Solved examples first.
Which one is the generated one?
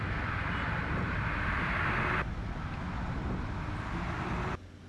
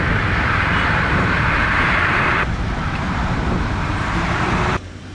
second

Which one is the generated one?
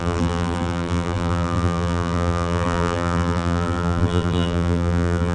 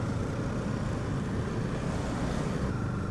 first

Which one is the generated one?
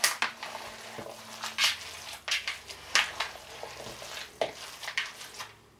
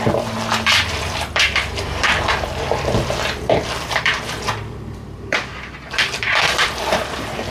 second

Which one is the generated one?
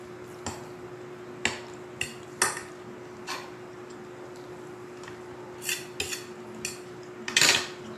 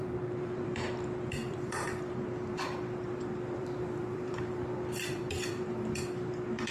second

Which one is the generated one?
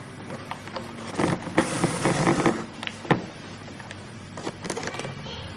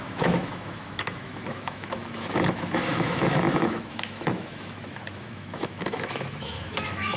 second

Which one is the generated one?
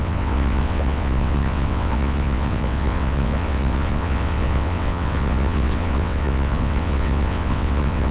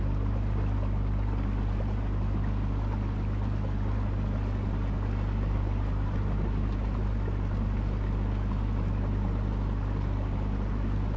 first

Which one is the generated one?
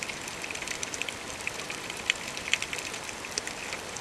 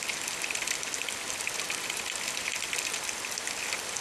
first